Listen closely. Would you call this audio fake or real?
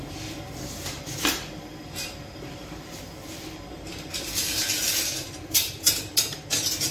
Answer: fake